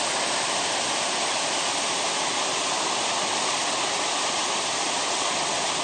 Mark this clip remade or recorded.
recorded